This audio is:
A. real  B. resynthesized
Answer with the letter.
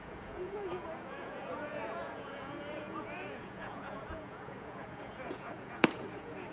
B